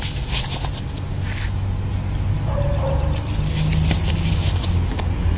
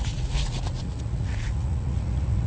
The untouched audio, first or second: first